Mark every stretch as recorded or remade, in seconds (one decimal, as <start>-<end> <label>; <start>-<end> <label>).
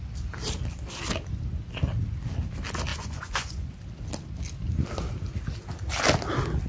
0.0-2.9 recorded; 2.9-3.7 remade; 3.7-6.7 recorded